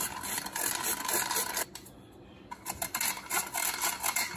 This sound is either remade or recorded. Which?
recorded